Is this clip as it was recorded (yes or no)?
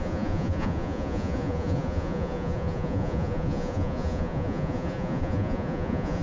no